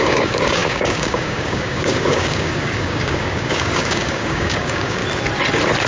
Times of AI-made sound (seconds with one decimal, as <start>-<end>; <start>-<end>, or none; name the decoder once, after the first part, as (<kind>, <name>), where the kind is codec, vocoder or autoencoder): 0.0-5.0 (codec, DAC)

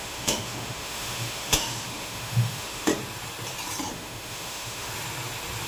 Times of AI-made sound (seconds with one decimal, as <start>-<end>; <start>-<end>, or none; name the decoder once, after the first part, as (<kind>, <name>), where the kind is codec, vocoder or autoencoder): 0.0-2.9 (autoencoder, DAC-VAE); 3.9-4.9

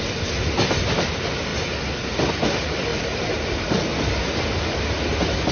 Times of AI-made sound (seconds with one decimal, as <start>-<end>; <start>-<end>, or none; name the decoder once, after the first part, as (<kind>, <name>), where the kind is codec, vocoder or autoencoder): 1.5-2.3 (vocoder, BigVGAN v2); 2.9-4.8

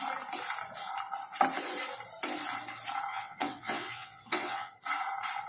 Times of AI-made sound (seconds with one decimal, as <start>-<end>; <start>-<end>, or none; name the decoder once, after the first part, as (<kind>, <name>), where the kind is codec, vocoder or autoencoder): 3.1-4.7 (vocoder, WaveNeXt)

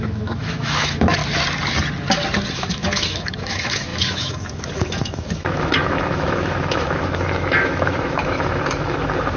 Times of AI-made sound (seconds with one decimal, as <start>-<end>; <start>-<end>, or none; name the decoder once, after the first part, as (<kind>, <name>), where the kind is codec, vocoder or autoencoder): 0.0-1.2 (autoencoder, DAC-VAE); 2.5-9.4